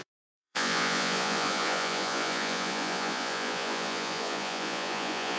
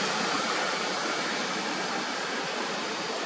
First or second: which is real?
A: second